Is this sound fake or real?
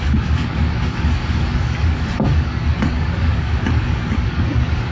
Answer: fake